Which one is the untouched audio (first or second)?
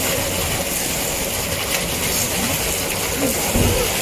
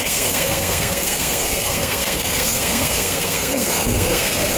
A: first